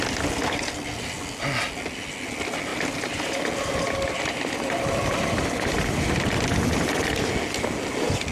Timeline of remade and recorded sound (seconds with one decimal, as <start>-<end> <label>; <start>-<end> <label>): 0.0-2.7 recorded; 2.7-7.3 remade; 7.3-8.3 recorded